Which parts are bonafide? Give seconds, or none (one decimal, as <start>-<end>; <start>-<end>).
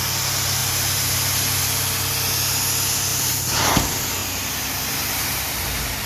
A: 0.0-0.6; 1.6-3.1; 3.7-4.2